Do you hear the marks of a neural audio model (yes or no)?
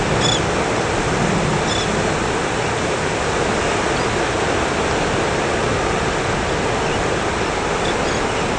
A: no